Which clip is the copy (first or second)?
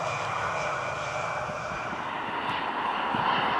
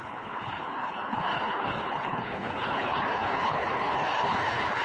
second